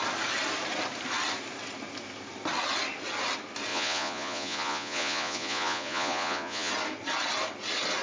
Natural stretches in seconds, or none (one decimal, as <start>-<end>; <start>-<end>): 0.0-3.7; 6.7-8.0